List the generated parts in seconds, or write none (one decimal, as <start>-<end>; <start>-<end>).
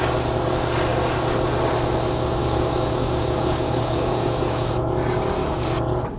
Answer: 2.4-4.7